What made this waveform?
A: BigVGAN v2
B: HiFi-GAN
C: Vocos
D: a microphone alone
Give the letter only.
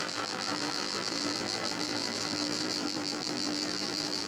A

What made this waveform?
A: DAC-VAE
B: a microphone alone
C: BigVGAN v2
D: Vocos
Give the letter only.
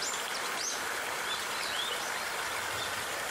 C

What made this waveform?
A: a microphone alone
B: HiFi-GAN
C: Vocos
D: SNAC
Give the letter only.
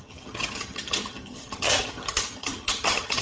B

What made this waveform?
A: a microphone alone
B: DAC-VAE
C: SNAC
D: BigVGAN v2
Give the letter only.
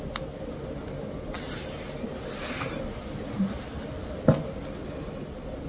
A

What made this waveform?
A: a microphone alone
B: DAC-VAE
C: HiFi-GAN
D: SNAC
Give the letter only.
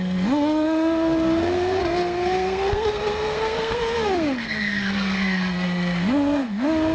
D